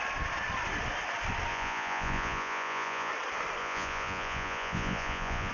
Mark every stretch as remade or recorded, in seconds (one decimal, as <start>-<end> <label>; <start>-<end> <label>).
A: 0.0-1.5 recorded; 1.5-3.1 remade; 3.1-3.6 recorded; 3.6-5.5 remade